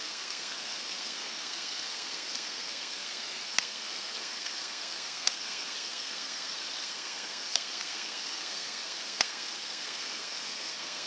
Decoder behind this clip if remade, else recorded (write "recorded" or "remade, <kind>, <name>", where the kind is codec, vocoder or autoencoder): remade, codec, SNAC